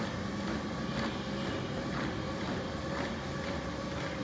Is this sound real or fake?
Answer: real